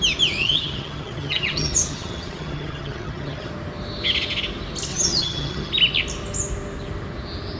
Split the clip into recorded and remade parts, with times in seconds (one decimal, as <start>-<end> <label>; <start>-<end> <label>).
0.0-0.4 recorded; 0.4-3.5 remade; 3.5-4.9 recorded; 4.9-5.7 remade; 5.7-7.6 recorded